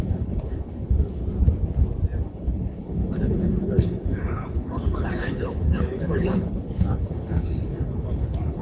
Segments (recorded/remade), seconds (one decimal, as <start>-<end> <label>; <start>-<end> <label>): 0.0-1.2 remade; 1.2-2.2 recorded; 2.2-8.6 remade